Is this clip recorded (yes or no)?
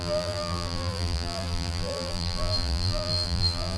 no